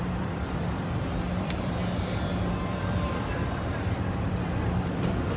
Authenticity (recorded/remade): remade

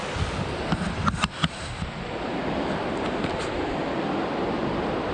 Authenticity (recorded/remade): recorded